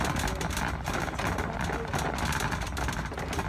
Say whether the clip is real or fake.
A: real